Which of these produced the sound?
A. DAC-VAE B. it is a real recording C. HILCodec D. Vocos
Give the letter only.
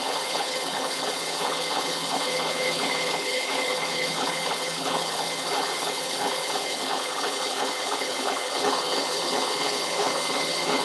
C